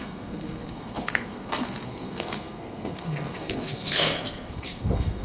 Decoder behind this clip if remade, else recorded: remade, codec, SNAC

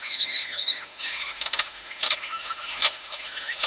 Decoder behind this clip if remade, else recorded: remade, autoencoder, DAC-VAE